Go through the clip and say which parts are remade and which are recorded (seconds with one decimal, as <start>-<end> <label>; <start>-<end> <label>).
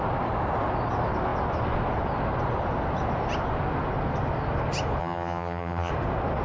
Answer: 0.0-5.0 recorded; 5.0-5.9 remade; 5.9-6.4 recorded